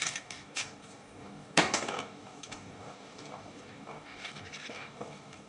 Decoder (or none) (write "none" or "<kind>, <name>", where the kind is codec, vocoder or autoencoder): codec, DAC